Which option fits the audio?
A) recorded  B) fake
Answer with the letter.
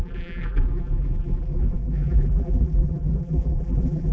B